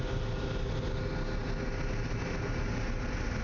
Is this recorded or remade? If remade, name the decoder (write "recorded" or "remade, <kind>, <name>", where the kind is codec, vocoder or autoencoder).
recorded